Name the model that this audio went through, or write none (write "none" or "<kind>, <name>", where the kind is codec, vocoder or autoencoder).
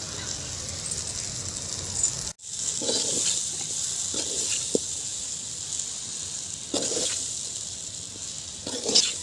none